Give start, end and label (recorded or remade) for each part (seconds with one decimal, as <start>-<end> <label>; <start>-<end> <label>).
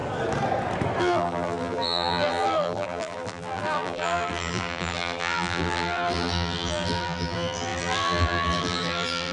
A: 0.0-1.0 recorded; 1.0-9.3 remade